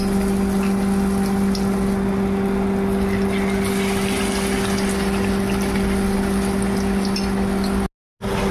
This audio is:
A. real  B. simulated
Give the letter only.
A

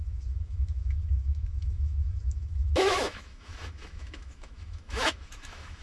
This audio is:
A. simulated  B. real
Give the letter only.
A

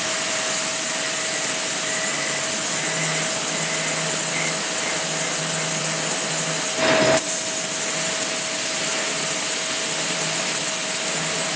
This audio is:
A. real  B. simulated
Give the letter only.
A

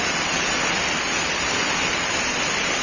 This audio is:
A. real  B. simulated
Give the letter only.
B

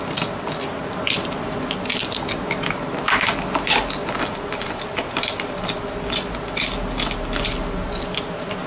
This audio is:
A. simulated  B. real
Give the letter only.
B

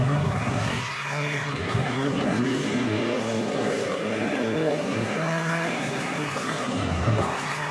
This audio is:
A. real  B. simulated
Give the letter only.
B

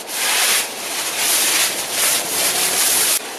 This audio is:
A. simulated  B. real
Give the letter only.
A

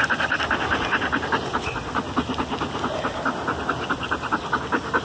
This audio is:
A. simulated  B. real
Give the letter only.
B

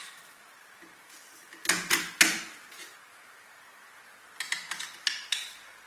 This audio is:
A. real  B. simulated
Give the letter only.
A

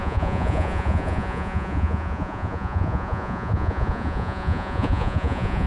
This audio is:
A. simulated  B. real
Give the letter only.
A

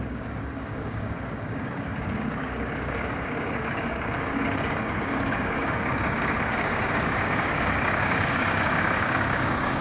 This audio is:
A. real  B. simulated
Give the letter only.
B